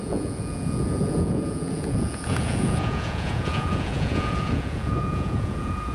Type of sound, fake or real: fake